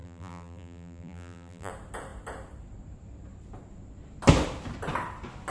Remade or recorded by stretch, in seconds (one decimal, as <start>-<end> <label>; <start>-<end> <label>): 0.0-1.7 remade; 1.7-5.5 recorded